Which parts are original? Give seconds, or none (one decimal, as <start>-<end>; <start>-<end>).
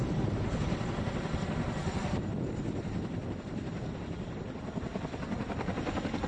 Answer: 0.0-6.3